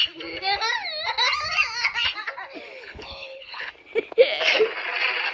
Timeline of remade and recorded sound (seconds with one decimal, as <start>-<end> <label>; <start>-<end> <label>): 0.0-2.7 recorded; 2.7-3.7 remade; 3.7-5.3 recorded